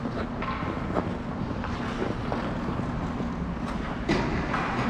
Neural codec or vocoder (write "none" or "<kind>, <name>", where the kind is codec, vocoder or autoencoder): none